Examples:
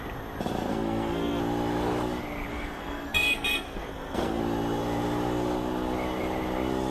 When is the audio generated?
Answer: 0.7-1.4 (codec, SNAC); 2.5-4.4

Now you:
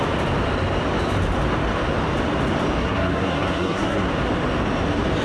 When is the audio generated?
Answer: 2.8-4.1 (codec, SNAC)

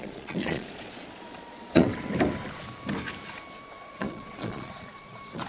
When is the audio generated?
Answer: 0.0-1.9 (vocoder, Vocos); 3.7-5.5

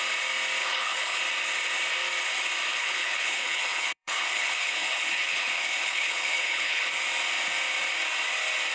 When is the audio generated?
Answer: 0.6-1.2 (codec, HILCodec); 2.7-6.8

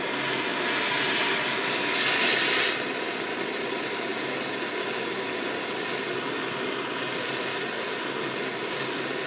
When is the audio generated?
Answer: none